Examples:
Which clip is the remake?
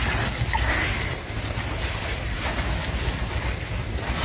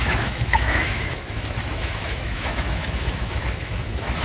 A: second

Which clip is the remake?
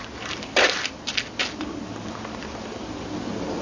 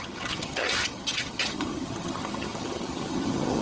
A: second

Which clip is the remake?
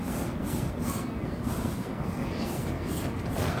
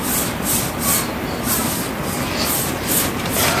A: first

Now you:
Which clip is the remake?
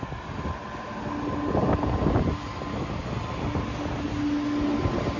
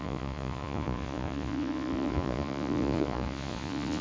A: second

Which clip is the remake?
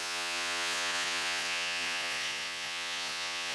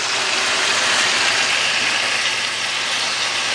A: first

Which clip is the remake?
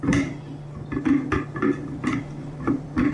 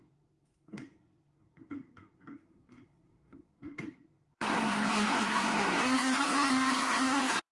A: second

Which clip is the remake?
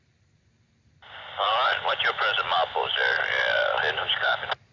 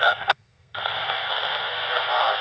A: second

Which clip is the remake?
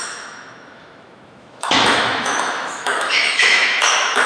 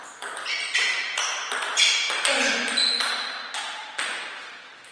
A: first